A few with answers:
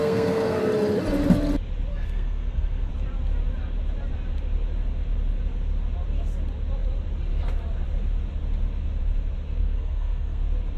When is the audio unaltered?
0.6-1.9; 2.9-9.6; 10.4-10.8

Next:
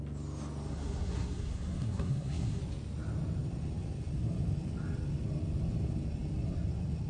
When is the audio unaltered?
0.0-0.7; 2.6-7.1

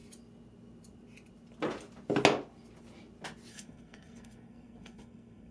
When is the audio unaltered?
0.0-3.5

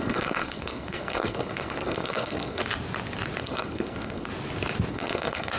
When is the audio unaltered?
2.6-3.4; 4.3-4.9

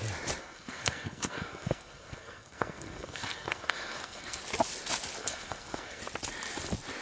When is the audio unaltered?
0.0-0.4; 4.4-5.2; 6.0-7.0

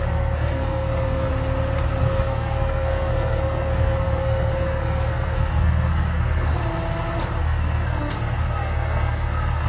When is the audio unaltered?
1.3-2.0; 6.5-7.4

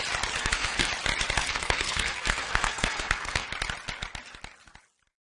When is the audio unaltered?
0.0-0.4; 0.9-1.4; 3.5-5.3